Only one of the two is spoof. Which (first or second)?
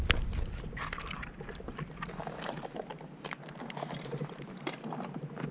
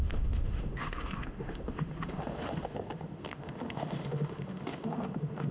second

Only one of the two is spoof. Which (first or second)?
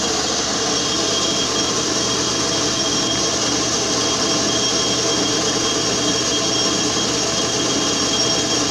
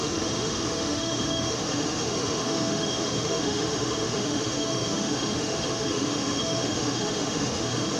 second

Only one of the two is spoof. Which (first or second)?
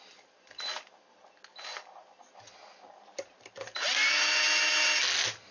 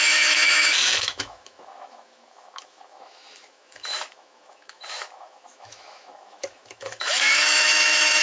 second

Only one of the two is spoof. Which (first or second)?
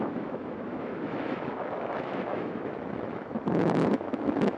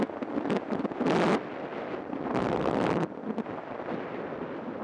first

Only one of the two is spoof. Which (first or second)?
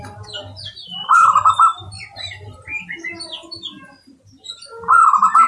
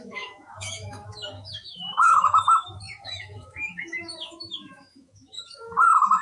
second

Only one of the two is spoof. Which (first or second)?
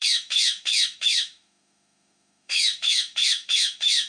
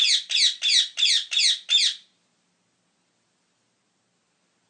first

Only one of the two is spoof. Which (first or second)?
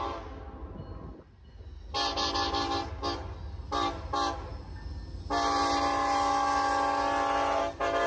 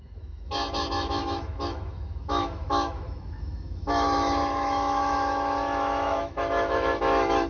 second